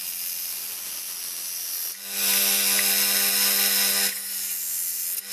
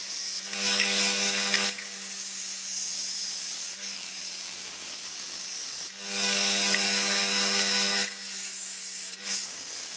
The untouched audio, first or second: first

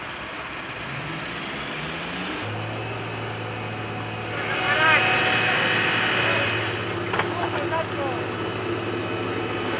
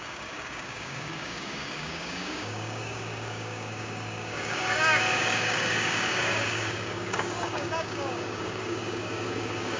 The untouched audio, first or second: first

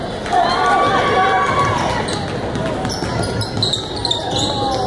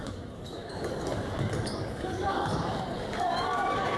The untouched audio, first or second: first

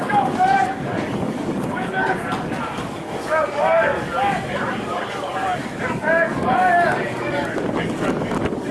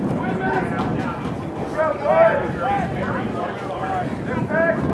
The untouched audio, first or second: second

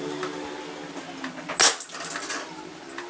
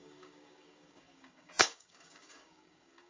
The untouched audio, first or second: first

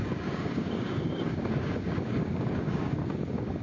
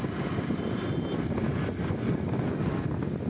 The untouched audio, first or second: second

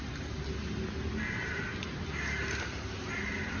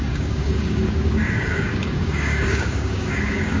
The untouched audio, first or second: first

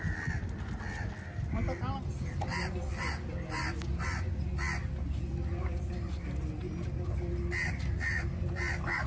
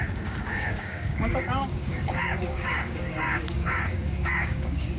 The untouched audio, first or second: first